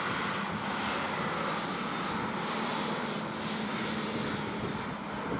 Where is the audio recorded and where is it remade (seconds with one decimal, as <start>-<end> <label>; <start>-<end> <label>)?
0.0-5.4 recorded